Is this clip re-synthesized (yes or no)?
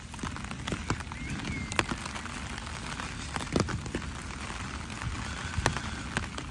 no